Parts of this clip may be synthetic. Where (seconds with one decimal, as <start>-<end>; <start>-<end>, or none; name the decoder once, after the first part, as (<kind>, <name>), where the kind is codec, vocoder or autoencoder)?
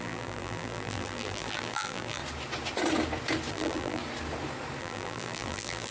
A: 0.0-2.2 (vocoder, BigVGAN v2); 3.5-4.0; 4.8-5.9